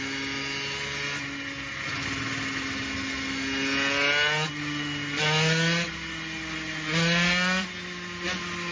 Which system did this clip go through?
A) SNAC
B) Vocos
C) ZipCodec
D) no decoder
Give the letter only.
D